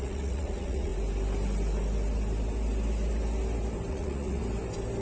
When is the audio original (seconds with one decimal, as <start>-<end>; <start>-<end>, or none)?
0.9-3.9; 4.4-5.0